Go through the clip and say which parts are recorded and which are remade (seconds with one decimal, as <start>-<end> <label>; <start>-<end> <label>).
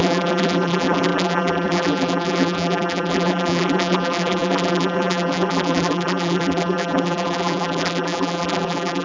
0.0-9.0 remade